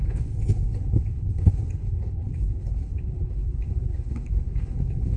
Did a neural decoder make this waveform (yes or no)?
yes